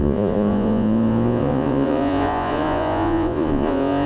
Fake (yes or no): yes